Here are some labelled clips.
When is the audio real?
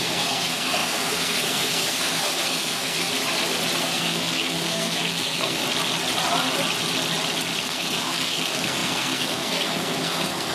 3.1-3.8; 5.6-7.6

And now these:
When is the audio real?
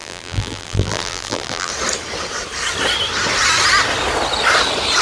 1.7-5.0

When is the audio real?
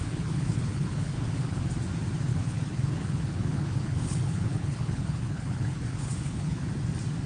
1.7-2.3; 6.7-7.3